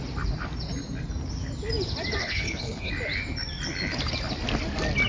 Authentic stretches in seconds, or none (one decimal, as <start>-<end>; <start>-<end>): 0.0-2.2; 2.9-5.1

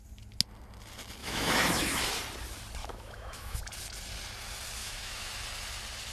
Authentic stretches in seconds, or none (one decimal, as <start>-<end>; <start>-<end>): 0.0-1.2; 2.0-2.8; 3.6-4.8; 5.3-6.1

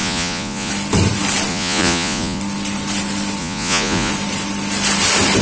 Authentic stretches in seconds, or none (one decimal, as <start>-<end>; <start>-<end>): 0.7-1.5; 2.4-3.4; 4.1-5.4